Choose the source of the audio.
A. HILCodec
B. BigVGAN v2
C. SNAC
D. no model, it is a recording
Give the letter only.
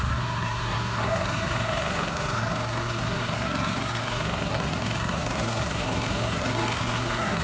C